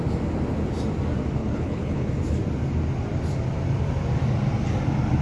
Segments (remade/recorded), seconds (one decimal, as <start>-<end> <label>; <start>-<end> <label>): 0.0-1.4 recorded; 1.4-2.1 remade; 2.1-5.2 recorded